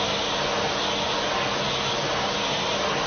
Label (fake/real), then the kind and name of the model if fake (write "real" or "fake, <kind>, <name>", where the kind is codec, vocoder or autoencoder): real